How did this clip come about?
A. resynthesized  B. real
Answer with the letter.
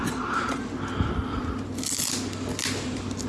B